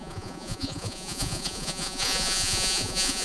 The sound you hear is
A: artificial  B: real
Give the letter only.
A